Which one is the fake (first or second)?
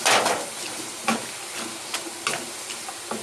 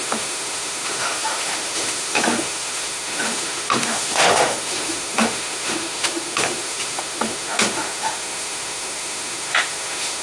second